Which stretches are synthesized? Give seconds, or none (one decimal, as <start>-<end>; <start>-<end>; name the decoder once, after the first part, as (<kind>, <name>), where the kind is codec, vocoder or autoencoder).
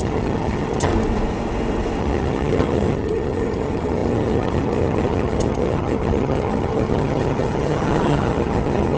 0.0-0.9 (vocoder, HiFi-GAN); 2.0-9.0